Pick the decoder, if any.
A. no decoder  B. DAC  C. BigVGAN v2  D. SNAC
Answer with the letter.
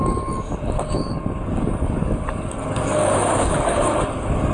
B